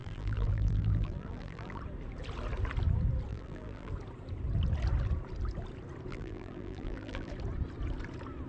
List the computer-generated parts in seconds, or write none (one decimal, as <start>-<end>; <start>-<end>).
0.0-1.8; 3.3-3.9; 6.1-7.3